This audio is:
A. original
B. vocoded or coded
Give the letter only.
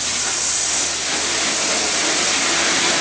A